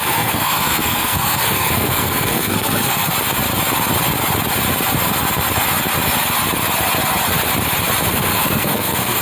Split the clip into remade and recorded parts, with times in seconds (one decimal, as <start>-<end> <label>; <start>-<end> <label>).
0.0-3.1 remade; 3.1-8.1 recorded; 8.1-9.2 remade

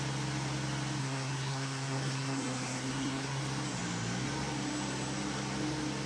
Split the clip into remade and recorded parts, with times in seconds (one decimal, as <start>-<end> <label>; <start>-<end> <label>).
0.0-1.0 recorded; 1.0-3.4 remade; 3.4-6.1 recorded

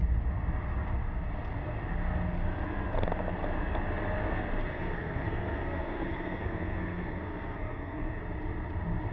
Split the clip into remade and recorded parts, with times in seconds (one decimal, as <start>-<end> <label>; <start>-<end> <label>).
0.0-4.7 recorded; 4.7-8.2 remade; 8.2-9.1 recorded

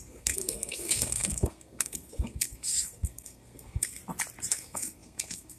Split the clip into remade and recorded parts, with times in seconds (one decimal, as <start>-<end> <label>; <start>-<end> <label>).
0.0-4.0 remade; 4.0-4.5 recorded; 4.5-5.6 remade

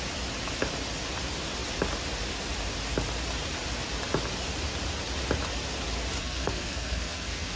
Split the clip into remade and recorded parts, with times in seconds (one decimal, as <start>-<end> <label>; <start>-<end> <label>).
0.0-6.2 recorded; 6.2-7.6 remade

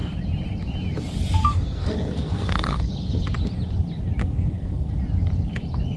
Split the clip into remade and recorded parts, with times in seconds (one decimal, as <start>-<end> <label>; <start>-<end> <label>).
0.0-1.4 recorded; 1.4-2.9 remade; 2.9-4.2 recorded; 4.2-4.9 remade; 4.9-6.0 recorded

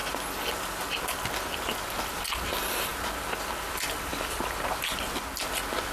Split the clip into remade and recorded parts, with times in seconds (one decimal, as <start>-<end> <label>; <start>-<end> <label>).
0.0-5.9 recorded